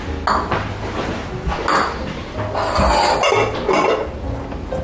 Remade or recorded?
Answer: recorded